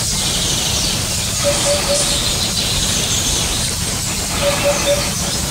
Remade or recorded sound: recorded